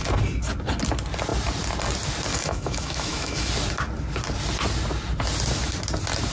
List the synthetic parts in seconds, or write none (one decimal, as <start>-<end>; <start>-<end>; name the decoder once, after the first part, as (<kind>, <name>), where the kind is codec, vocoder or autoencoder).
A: 2.3-3.5 (autoencoder, DAC-VAE)